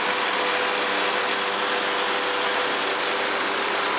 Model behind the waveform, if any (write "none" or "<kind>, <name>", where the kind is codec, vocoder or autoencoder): none